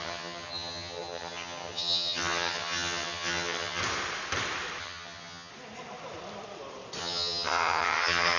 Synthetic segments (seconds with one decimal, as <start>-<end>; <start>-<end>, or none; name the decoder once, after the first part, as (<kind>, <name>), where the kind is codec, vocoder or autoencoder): 0.0-3.8 (vocoder, HiFi-GAN); 4.8-5.5; 7.0-8.4